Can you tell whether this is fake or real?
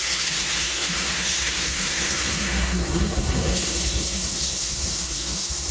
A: fake